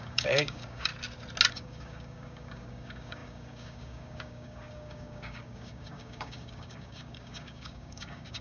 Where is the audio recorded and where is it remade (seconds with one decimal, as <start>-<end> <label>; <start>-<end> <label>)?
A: 0.0-0.9 remade; 0.9-1.5 recorded; 1.5-8.4 remade